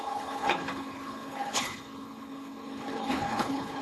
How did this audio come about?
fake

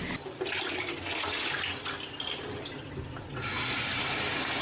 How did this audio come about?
real